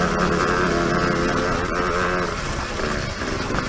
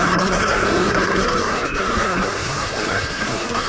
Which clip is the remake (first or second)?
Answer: second